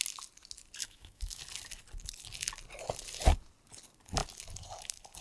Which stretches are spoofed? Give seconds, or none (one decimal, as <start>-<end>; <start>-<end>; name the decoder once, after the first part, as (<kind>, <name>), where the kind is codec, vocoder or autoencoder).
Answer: 0.8-1.4 (autoencoder, DAC-VAE)